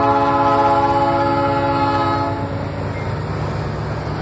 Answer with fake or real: real